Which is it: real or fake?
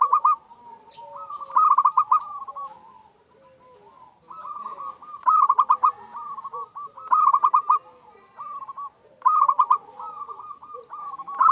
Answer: real